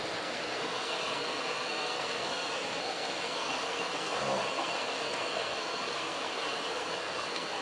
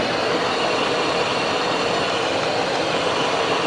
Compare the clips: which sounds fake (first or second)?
first